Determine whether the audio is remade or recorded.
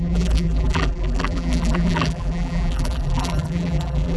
remade